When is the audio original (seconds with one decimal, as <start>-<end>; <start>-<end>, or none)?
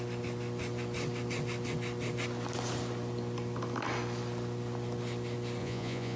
0.0-5.6